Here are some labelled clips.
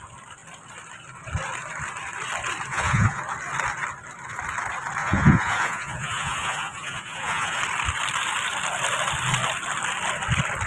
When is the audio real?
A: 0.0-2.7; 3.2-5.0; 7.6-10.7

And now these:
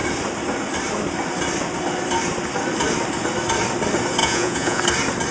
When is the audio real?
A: 0.0-4.2; 4.8-5.3

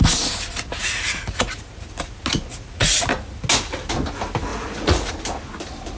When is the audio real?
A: 0.0-0.8; 1.8-2.5; 3.0-4.5; 5.1-6.0

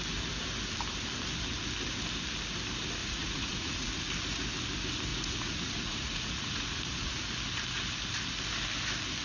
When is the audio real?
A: 0.0-3.0; 3.9-5.1; 7.2-9.2

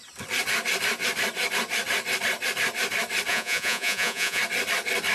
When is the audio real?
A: 0.0-3.3; 4.4-5.1

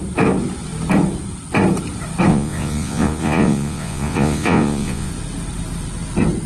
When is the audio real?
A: 0.0-2.3; 5.1-6.5